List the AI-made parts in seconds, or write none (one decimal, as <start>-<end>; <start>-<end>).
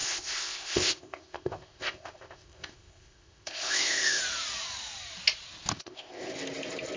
0.0-4.2; 5.7-6.3